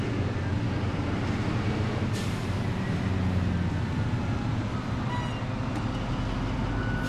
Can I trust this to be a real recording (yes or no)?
yes